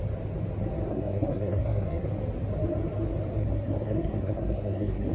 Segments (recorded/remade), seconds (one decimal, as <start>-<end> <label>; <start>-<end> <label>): 0.0-0.9 recorded; 0.9-2.1 remade; 2.1-3.4 recorded; 3.4-5.1 remade